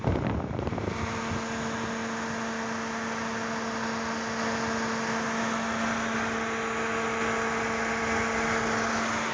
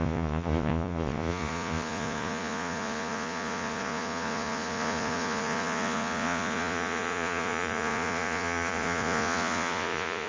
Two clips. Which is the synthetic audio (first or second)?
second